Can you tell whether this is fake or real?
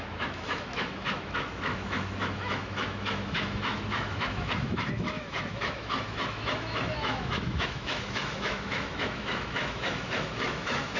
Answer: fake